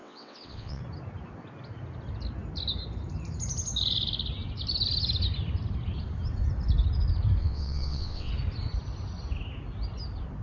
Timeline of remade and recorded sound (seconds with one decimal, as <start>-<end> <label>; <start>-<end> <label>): 0.0-0.8 remade; 0.8-7.4 recorded; 7.4-8.3 remade; 8.3-10.4 recorded